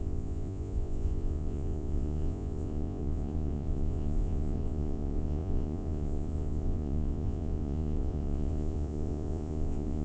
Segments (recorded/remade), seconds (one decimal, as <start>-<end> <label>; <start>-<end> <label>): 0.0-10.0 remade